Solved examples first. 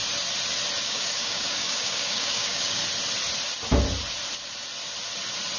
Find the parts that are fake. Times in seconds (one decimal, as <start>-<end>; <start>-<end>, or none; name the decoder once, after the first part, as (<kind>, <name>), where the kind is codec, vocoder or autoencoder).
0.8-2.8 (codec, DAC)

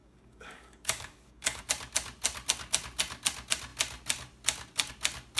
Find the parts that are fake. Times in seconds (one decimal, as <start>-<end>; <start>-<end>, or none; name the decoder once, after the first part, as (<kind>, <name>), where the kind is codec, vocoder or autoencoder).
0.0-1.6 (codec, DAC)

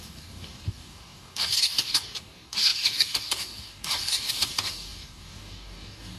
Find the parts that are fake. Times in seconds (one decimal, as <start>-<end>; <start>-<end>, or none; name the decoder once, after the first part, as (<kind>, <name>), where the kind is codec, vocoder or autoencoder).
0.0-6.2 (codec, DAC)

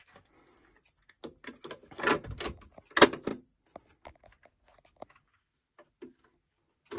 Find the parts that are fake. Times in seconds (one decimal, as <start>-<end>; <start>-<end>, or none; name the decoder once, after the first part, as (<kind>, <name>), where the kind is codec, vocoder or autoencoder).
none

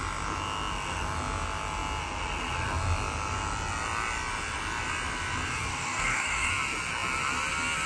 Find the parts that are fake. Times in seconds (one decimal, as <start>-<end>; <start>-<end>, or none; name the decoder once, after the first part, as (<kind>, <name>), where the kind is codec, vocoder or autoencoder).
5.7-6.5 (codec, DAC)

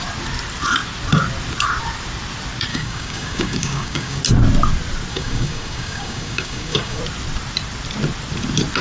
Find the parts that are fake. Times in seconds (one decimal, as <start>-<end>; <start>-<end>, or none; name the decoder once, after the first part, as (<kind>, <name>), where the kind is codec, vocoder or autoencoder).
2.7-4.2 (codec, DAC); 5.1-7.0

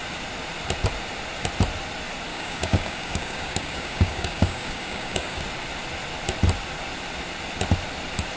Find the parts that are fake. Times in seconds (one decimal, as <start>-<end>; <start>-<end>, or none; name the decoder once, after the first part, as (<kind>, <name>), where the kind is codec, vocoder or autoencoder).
2.3-5.4 (codec, DAC)

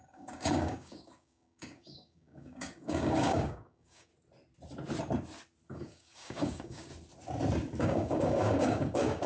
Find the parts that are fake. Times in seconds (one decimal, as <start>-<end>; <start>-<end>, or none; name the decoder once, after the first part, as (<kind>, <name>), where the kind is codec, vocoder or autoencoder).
0.0-4.1 (codec, DAC); 5.7-6.9; 7.8-9.3